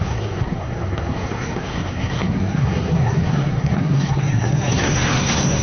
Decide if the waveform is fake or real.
fake